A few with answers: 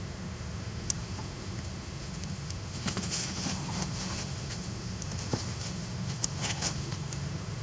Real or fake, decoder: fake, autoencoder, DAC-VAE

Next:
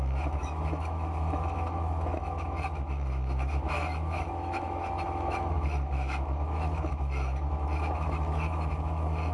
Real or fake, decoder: fake, autoencoder, DAC-VAE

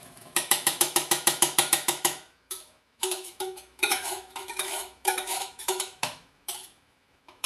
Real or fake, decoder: fake, autoencoder, DAC-VAE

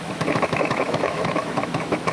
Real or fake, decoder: fake, autoencoder, DAC-VAE